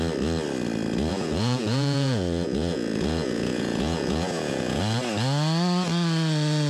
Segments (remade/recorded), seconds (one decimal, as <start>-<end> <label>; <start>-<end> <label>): 0.0-1.1 recorded; 1.1-4.8 remade; 4.8-6.7 recorded